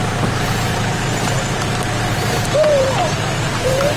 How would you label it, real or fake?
fake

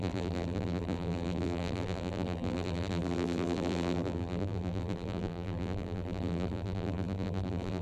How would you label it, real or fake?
fake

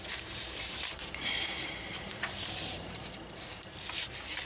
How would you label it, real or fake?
fake